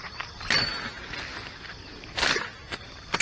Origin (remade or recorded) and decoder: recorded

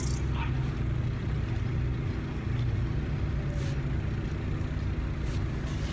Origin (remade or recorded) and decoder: recorded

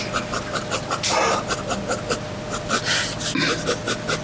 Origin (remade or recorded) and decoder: recorded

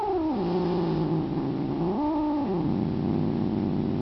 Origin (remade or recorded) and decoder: recorded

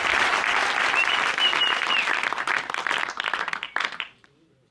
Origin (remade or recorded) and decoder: remade, vocoder, BigVGAN v2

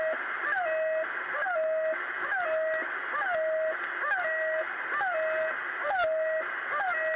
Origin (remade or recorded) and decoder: recorded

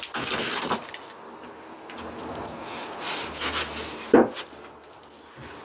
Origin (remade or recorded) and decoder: recorded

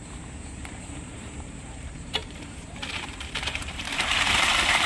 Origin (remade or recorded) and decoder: remade, vocoder, BigVGAN v2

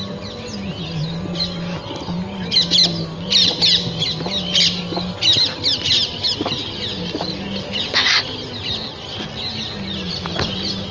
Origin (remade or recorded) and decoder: recorded